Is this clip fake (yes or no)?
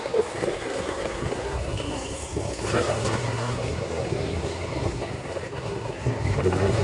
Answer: yes